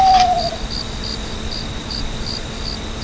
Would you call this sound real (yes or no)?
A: yes